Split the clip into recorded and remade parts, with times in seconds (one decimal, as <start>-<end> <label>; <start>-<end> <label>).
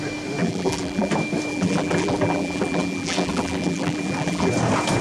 0.0-0.4 recorded; 0.4-1.1 remade; 1.1-1.5 recorded; 1.5-4.5 remade; 4.5-5.0 recorded